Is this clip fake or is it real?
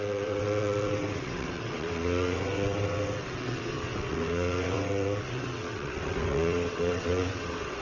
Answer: fake